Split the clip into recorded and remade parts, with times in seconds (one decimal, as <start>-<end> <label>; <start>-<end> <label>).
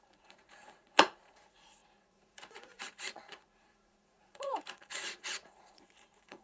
0.0-6.4 remade